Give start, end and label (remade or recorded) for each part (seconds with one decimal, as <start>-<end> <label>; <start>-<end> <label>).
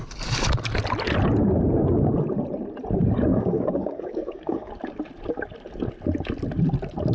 0.0-3.3 recorded; 3.3-4.7 remade; 4.7-7.1 recorded